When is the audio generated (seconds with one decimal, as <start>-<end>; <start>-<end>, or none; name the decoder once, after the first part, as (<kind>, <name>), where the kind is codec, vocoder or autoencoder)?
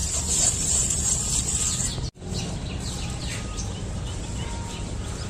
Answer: none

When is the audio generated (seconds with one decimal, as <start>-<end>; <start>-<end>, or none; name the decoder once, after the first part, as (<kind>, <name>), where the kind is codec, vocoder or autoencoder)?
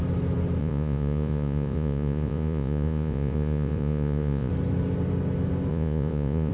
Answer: 0.6-4.5 (vocoder, Vocos); 5.7-6.5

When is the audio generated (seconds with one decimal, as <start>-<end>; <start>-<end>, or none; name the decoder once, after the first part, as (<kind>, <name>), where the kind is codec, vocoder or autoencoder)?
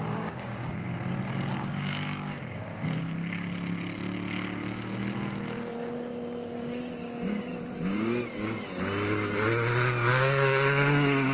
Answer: 0.0-0.9 (codec, DAC); 1.5-2.7; 6.4-7.5; 10.1-11.3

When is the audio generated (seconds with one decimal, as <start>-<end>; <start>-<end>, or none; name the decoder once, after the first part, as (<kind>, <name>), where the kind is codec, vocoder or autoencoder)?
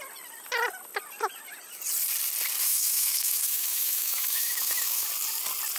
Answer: 2.6-5.1 (autoencoder, DAC-VAE)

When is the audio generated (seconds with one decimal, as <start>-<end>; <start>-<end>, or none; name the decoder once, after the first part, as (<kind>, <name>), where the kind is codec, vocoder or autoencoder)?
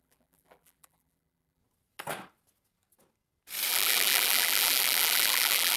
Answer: 0.0-1.6 (vocoder, BigVGAN v2); 3.7-5.8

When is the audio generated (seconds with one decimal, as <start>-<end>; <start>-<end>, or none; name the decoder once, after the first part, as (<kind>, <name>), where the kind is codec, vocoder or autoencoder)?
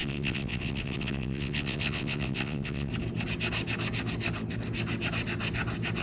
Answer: 0.0-2.9 (vocoder, WaveNeXt)